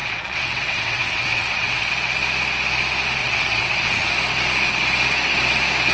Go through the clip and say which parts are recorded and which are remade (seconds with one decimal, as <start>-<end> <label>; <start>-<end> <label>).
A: 0.0-1.9 remade; 1.9-3.2 recorded; 3.2-4.1 remade; 4.1-5.9 recorded

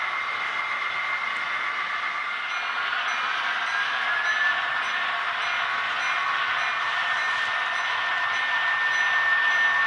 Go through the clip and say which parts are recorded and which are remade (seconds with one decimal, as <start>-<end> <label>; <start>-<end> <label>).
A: 0.0-9.9 recorded

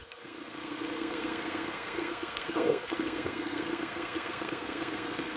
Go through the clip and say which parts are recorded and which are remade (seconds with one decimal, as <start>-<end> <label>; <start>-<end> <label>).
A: 0.0-5.4 remade